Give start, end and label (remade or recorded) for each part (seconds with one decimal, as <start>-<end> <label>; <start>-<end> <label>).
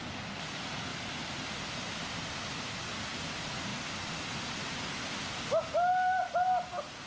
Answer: 0.0-7.1 recorded